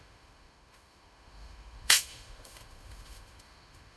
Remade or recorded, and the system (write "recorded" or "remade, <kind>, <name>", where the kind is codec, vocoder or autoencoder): remade, autoencoder, DAC-VAE